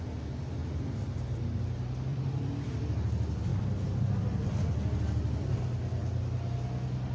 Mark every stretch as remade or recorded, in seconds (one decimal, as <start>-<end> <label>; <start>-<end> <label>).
0.0-0.6 recorded; 0.6-1.6 remade; 1.6-2.1 recorded; 2.1-2.7 remade; 2.7-7.1 recorded